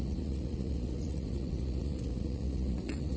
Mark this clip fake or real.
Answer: fake